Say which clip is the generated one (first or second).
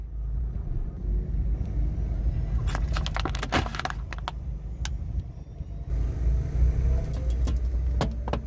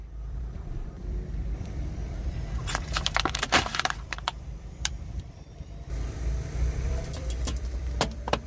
second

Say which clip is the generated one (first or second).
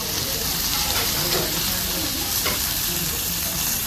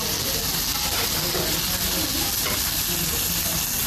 first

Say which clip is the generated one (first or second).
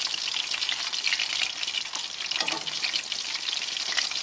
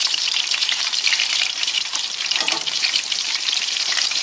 second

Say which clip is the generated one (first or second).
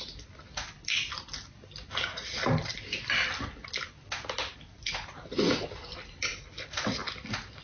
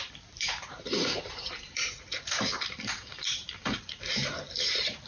second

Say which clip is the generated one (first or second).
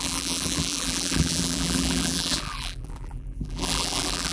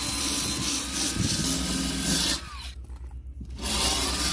first